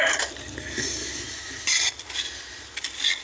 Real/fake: real